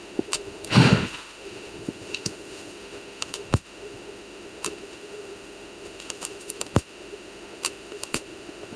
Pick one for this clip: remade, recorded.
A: remade